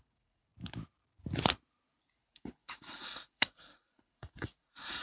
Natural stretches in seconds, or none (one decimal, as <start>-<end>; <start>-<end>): 0.5-2.1